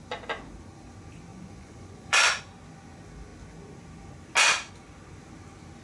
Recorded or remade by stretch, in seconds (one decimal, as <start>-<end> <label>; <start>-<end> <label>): 0.0-1.3 recorded; 1.3-2.4 remade; 2.4-5.8 recorded